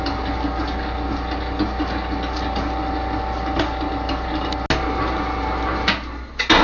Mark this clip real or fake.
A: real